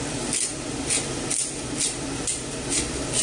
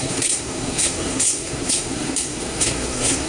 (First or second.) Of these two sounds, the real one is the first